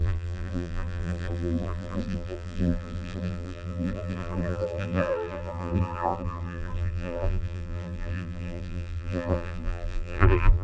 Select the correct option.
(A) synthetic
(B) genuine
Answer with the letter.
A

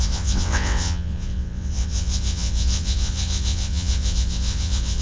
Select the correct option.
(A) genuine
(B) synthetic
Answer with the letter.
B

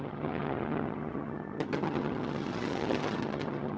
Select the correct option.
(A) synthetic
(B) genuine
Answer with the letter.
A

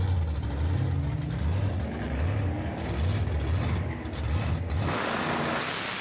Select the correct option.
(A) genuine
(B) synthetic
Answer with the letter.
A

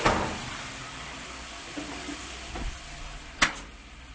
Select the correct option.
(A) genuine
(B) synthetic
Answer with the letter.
A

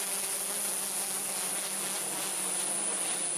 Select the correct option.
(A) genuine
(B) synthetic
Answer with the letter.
A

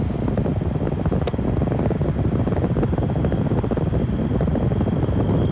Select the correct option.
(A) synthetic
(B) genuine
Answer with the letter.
B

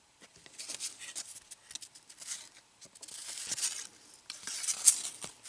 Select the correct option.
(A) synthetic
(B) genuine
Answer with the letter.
B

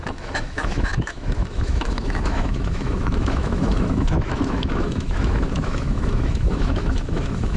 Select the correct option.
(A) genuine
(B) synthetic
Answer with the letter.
B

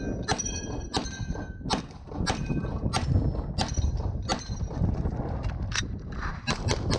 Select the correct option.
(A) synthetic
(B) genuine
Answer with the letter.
B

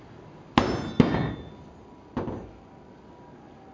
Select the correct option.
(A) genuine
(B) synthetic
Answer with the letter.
A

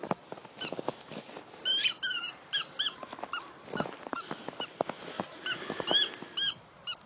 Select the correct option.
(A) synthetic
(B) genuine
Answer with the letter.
B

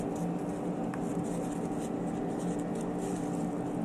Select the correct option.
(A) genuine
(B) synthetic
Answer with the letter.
A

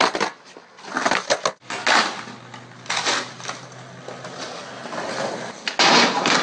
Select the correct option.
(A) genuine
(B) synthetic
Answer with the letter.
A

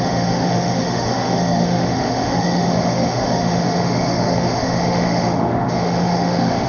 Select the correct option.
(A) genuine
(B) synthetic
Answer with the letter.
B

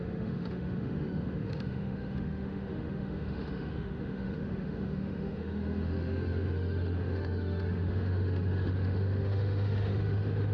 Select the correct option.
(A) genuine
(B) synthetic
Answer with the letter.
B